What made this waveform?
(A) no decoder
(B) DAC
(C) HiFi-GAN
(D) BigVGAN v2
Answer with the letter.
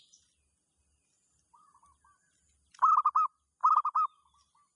A